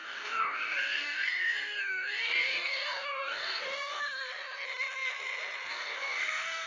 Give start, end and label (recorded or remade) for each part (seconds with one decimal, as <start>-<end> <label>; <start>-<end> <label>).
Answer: 0.0-4.0 remade; 4.0-5.7 recorded; 5.7-6.7 remade